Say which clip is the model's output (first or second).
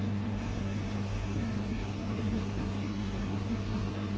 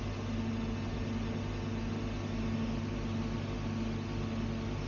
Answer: first